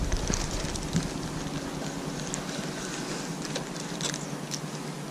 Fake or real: real